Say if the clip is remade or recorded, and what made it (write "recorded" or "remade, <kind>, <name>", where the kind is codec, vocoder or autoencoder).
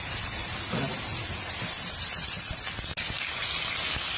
recorded